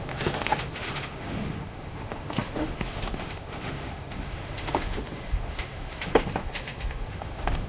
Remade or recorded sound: remade